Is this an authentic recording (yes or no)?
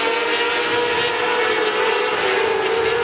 yes